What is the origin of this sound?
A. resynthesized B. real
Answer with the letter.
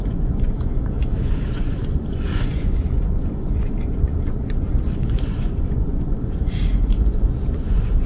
A